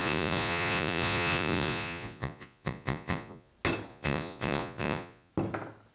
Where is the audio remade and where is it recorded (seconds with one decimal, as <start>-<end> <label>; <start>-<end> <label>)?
0.0-3.5 remade; 3.5-3.9 recorded; 3.9-5.3 remade; 5.3-5.9 recorded